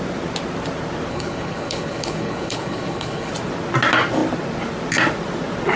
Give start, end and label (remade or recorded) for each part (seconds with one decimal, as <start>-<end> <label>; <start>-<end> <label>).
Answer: 0.0-1.1 recorded; 1.1-3.3 remade; 3.3-5.8 recorded